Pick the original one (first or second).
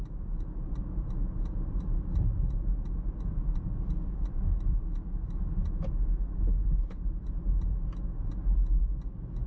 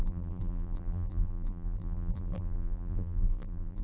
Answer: first